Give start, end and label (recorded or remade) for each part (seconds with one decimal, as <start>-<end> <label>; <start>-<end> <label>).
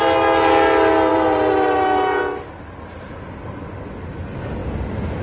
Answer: 0.0-1.1 recorded; 1.1-2.2 remade; 2.2-5.2 recorded